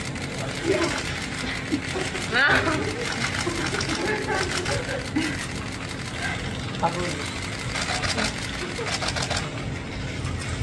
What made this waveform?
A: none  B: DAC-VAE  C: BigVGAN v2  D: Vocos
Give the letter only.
A